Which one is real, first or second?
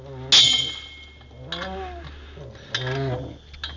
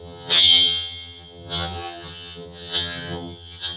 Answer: first